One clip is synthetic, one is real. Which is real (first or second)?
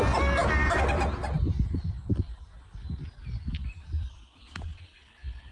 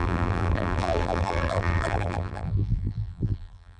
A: first